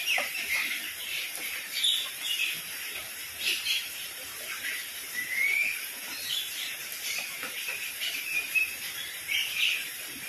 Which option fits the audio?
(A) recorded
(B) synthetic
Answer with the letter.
B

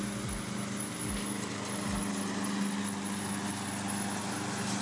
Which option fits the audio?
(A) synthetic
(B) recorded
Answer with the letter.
B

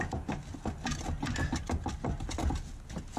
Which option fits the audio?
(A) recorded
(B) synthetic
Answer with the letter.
A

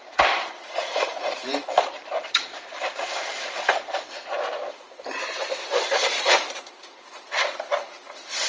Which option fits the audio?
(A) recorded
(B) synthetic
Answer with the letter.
B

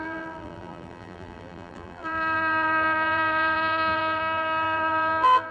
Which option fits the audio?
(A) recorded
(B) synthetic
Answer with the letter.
B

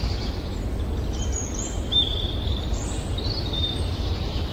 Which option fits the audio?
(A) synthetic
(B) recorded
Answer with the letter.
B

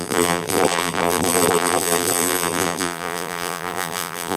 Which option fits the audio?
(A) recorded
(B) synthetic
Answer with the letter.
B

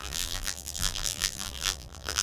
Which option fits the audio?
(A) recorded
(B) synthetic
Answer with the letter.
B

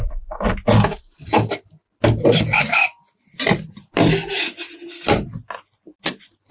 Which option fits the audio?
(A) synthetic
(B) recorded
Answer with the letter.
B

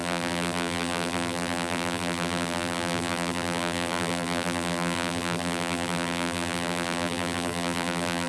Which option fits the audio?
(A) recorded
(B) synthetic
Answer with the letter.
B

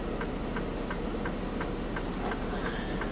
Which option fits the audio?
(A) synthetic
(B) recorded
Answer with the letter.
B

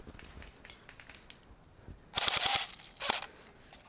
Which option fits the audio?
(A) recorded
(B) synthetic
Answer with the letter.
A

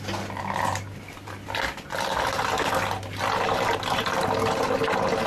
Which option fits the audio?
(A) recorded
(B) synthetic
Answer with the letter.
A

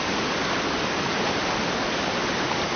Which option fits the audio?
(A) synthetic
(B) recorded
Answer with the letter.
A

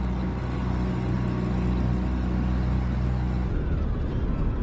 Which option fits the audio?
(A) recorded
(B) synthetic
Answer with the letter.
A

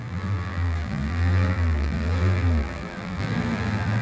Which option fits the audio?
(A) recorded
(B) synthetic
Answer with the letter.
B